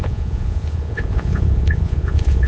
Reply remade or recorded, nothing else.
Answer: remade